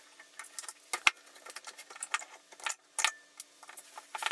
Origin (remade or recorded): recorded